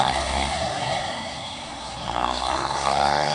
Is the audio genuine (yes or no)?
no